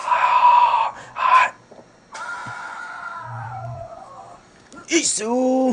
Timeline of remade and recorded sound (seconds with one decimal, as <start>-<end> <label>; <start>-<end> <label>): 0.0-1.2 remade; 1.2-2.4 recorded; 2.4-4.2 remade; 4.2-5.7 recorded